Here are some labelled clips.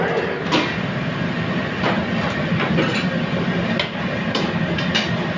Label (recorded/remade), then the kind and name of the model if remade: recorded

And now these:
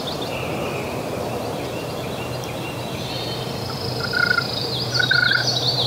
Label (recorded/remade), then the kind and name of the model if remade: remade, vocoder, BigVGAN v2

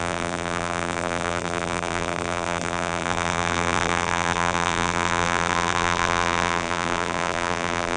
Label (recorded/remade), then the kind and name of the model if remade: remade, vocoder, BigVGAN v2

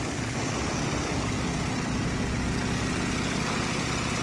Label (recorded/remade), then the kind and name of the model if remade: recorded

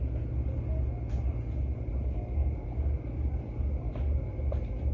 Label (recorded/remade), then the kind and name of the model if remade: recorded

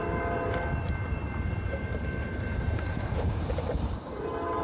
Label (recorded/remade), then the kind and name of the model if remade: remade, vocoder, BigVGAN v2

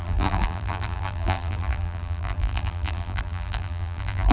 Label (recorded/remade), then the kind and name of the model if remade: remade, vocoder, BigVGAN v2